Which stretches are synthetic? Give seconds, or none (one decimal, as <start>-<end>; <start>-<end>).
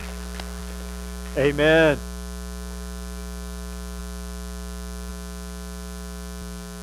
none